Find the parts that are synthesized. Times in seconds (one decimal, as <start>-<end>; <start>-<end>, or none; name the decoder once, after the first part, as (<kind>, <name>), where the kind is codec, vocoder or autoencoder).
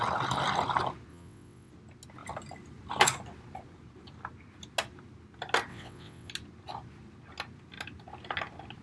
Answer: 1.1-1.7 (vocoder, WaveNeXt); 5.7-6.3